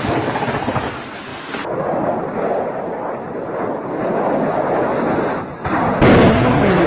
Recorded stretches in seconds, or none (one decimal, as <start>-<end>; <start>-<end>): 0.0-6.3